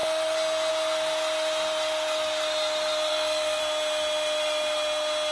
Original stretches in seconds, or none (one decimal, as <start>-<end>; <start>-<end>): 0.0-3.1; 3.6-5.3

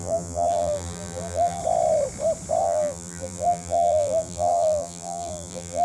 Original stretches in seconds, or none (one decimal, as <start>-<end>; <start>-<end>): 1.6-2.6

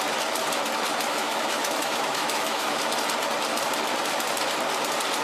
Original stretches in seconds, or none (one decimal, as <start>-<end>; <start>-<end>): 0.0-1.1; 2.8-5.2

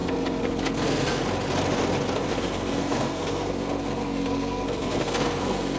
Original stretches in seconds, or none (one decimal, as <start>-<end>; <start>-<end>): 1.2-2.3

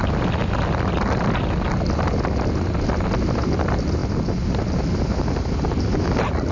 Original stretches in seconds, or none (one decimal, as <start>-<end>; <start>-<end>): 0.0-6.5

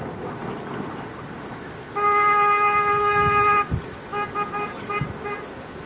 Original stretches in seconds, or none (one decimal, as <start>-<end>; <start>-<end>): 0.0-5.9

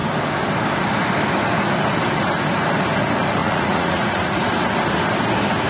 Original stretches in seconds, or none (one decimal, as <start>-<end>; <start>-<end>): 0.0-3.4; 4.4-5.7

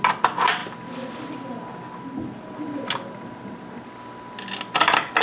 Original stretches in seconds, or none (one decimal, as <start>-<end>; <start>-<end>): 0.0-5.2